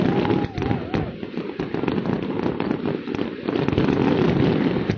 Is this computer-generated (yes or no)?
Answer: no